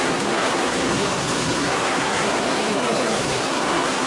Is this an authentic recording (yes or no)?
no